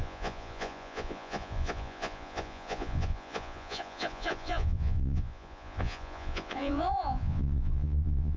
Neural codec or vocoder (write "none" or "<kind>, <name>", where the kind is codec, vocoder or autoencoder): vocoder, Vocos